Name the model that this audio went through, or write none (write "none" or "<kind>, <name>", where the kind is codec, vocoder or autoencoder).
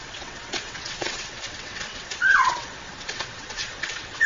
vocoder, WaveNeXt